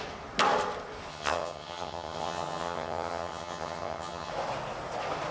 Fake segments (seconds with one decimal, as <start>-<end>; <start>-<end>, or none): 1.1-4.3